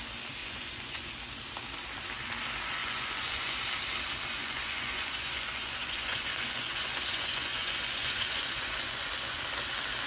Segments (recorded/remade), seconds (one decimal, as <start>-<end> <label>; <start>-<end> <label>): 0.0-0.4 recorded; 0.4-1.1 remade; 1.1-2.8 recorded; 2.8-3.6 remade; 3.6-4.4 recorded; 4.4-9.4 remade; 9.4-10.1 recorded